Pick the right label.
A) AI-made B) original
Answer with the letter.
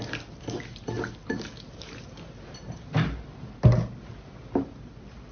B